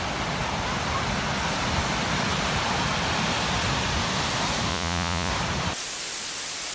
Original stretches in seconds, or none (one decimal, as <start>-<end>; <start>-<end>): 0.0-4.7; 5.3-6.7